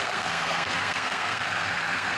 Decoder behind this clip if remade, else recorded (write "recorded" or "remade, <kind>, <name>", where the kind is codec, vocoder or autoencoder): remade, codec, SNAC